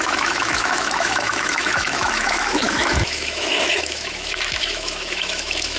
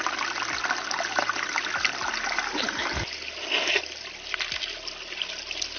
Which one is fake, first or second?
first